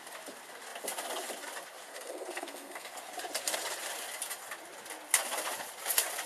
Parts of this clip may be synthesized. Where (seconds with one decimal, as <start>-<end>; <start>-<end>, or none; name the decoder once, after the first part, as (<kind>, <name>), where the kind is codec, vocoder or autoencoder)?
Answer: 1.9-2.9 (codec, SNAC)

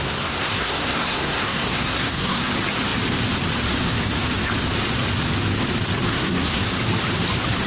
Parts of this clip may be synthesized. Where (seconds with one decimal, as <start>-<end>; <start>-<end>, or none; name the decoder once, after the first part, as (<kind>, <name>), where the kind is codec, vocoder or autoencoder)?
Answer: 0.0-2.5 (codec, SNAC); 6.1-6.6

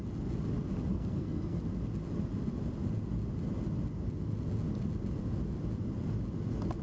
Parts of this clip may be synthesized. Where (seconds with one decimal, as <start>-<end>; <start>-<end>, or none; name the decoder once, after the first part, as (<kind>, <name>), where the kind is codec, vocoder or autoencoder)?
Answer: 0.9-1.6 (codec, SNAC)

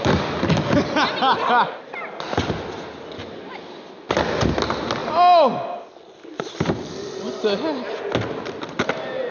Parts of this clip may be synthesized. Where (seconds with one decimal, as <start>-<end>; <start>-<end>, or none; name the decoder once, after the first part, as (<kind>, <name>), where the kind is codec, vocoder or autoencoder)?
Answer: none

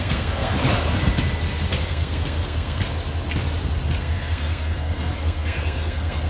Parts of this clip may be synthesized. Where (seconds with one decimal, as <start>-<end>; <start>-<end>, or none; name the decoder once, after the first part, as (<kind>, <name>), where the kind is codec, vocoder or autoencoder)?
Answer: 0.0-0.5 (codec, SNAC); 1.8-2.8; 4.0-6.3

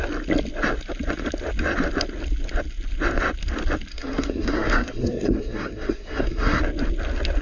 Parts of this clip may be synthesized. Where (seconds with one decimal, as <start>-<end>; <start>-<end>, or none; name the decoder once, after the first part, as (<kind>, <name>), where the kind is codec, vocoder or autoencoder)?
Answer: 3.9-6.6 (codec, SNAC)